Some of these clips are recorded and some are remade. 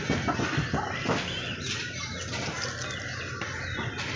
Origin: recorded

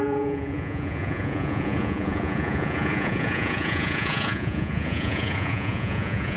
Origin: remade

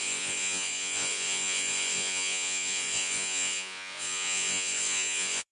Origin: remade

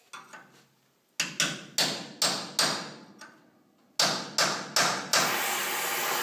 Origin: recorded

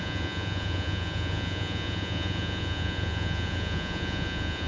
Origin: remade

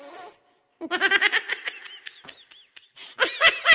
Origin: recorded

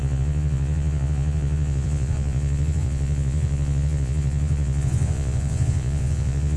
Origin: remade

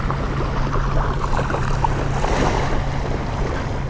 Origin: recorded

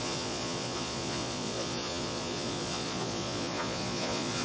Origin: remade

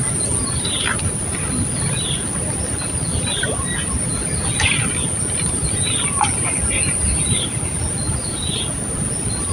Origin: recorded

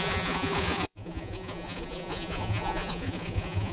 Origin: remade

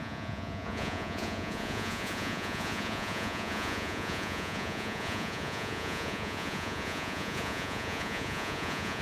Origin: remade